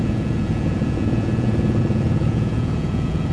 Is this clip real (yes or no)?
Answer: no